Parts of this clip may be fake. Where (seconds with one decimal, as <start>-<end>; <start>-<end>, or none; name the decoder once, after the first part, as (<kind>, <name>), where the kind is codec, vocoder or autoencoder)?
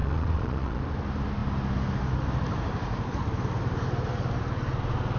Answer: 0.0-0.8 (vocoder, Vocos)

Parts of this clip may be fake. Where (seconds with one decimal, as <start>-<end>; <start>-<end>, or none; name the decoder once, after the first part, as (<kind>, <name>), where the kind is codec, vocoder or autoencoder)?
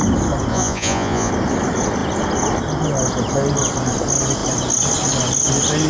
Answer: 0.5-1.3 (vocoder, Vocos)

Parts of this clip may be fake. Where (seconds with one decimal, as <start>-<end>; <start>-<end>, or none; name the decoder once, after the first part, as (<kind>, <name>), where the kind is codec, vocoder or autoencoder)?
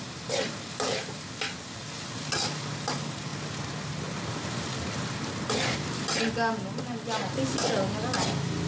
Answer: none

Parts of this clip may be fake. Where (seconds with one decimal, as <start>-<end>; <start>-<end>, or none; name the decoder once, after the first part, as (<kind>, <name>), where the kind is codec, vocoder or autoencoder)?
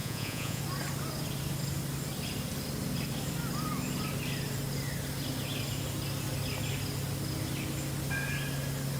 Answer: 0.0-0.6 (vocoder, Vocos)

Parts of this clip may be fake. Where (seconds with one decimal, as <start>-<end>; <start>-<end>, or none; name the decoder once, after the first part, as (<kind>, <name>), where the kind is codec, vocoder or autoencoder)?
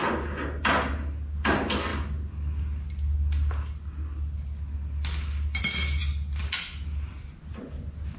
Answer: none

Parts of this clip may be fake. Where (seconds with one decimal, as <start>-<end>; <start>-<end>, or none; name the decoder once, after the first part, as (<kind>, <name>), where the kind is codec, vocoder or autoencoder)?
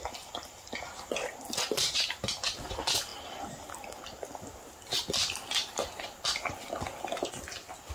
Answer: none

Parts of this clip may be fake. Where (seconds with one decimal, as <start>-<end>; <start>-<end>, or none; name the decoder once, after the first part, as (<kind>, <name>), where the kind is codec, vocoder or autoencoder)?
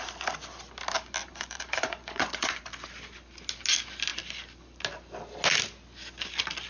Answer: 1.3-2.6 (vocoder, Vocos)